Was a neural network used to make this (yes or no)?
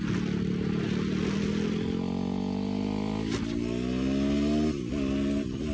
no